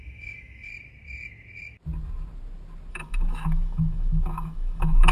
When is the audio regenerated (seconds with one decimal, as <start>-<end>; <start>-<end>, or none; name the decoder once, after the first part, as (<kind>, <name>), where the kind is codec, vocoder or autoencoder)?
0.0-0.7 (autoencoder, DAC-VAE); 2.9-5.1